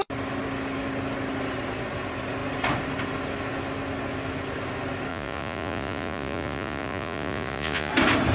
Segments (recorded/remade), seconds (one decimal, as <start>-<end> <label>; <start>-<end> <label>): 0.0-5.1 recorded; 5.1-7.9 remade; 7.9-8.3 recorded